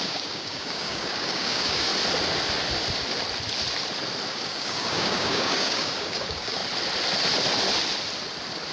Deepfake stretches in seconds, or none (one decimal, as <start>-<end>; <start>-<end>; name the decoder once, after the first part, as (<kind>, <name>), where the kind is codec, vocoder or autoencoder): 0.0-1.9 (codec, DAC); 4.3-6.6